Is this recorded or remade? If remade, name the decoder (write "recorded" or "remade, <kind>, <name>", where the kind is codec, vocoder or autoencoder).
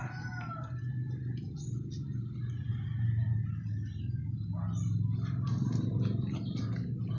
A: recorded